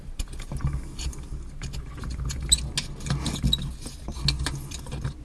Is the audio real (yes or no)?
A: yes